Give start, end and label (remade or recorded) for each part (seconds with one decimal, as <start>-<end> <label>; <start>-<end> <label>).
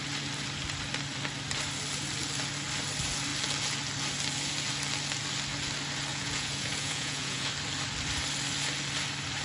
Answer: 0.0-6.1 recorded; 6.1-7.5 remade; 7.5-9.4 recorded